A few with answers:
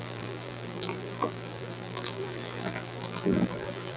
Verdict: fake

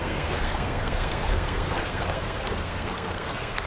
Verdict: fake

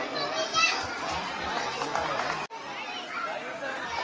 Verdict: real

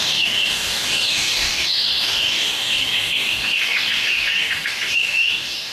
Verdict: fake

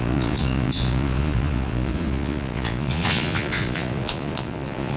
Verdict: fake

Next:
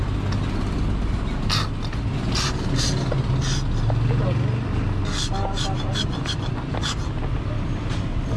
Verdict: real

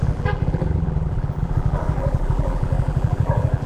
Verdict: fake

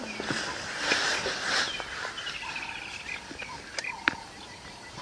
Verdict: real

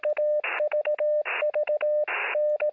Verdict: real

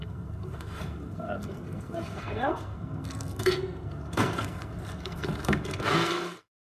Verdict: fake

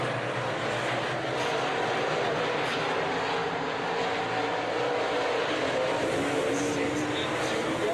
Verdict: real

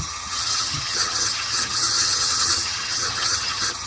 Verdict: fake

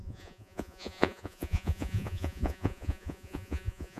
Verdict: fake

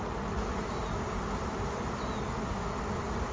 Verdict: real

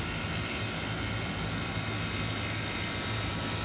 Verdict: real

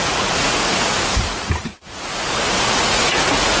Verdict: fake